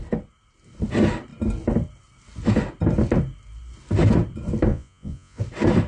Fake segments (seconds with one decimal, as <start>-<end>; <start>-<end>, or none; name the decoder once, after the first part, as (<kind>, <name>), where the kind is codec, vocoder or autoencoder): 4.7-5.4 (vocoder, Vocos)